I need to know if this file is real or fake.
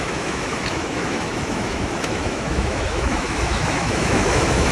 fake